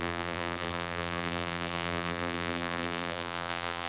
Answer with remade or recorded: remade